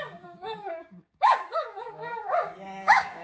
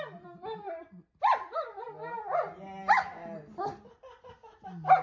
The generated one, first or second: first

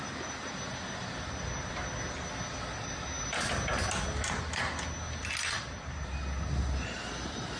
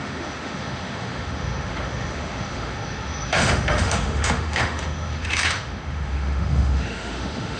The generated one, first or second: second